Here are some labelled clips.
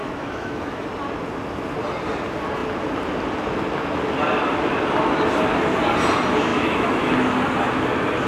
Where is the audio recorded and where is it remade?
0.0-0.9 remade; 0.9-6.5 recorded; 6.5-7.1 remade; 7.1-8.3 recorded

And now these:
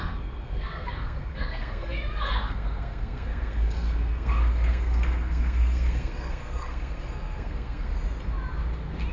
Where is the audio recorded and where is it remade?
0.0-7.9 remade; 7.9-9.1 recorded

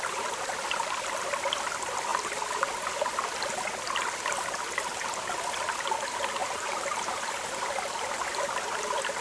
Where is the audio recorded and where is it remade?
0.0-6.4 recorded; 6.4-7.3 remade; 7.3-9.2 recorded

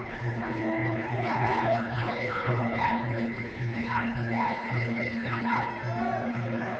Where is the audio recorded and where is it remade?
0.0-5.7 remade; 5.7-6.3 recorded; 6.3-6.8 remade

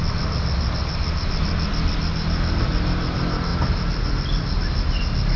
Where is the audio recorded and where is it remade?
0.0-5.4 recorded